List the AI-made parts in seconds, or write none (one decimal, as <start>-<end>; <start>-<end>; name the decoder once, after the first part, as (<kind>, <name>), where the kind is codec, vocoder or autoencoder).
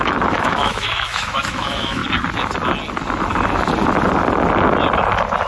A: 0.0-2.0 (autoencoder, DAC-VAE)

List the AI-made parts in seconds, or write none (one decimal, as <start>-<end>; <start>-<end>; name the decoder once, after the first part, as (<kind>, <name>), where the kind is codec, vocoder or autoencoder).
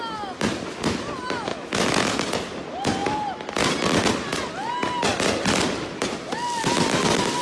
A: 1.5-2.1 (autoencoder, DAC-VAE)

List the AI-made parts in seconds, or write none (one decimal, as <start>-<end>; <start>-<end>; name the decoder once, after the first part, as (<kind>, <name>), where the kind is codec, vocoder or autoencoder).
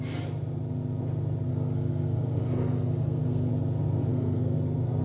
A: 1.5-3.5 (codec, SNAC); 4.1-5.0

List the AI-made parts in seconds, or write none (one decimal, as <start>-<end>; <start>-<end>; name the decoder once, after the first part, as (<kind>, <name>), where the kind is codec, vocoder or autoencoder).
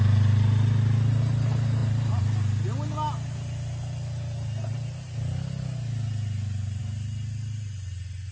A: none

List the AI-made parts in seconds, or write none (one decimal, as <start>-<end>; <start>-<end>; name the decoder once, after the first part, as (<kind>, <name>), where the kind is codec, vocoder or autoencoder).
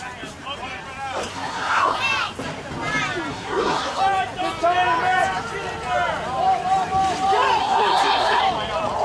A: 1.3-2.0 (codec, SNAC); 3.3-4.0; 7.6-8.4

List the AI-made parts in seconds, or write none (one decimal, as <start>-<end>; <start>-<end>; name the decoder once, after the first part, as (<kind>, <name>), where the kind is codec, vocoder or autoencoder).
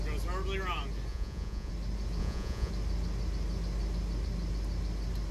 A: 1.1-1.7 (vocoder, Vocos); 2.2-2.7